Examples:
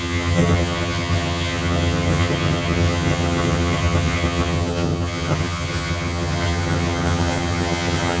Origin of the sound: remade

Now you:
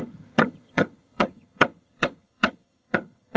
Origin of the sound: remade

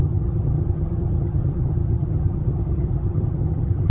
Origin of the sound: remade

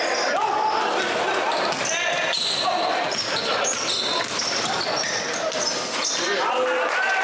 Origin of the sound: recorded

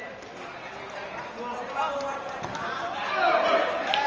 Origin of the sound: recorded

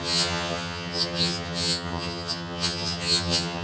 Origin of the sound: remade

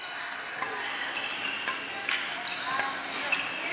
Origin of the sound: recorded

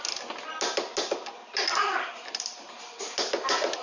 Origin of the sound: recorded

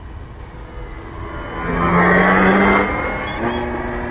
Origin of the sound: recorded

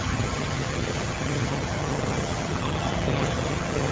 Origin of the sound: remade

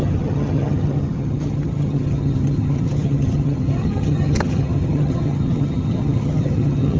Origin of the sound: remade